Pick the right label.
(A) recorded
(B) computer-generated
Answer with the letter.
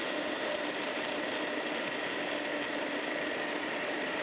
A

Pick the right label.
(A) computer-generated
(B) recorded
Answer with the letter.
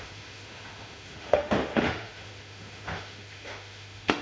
A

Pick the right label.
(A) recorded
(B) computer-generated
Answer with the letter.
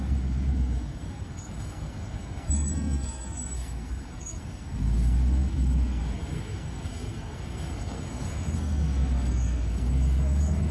B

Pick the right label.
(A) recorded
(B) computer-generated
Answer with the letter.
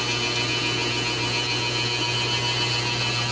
A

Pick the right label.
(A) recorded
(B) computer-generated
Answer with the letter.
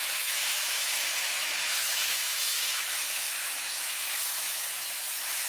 B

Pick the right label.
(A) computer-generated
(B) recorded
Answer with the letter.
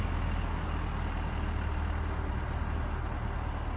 B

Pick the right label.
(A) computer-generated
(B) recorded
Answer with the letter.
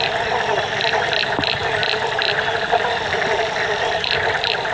B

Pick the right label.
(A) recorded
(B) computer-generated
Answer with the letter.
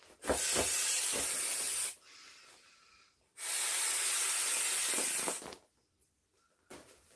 A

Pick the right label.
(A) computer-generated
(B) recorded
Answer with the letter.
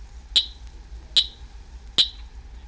B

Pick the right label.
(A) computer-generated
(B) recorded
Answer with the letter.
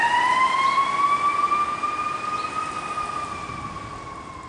B